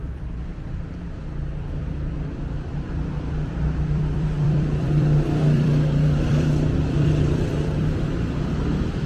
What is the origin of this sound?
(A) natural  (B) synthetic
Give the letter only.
B